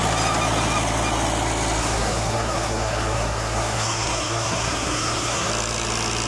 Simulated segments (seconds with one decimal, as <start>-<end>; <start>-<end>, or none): 1.8-5.5